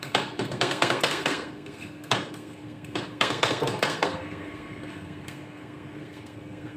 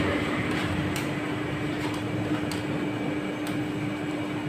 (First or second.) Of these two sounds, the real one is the second